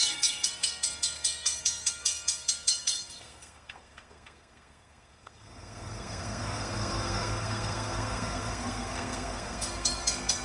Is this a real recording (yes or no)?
no